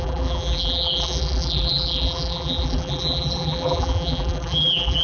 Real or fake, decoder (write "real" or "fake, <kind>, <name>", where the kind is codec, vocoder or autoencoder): fake, vocoder, BigVGAN v2